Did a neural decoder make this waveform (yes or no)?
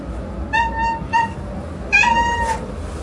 no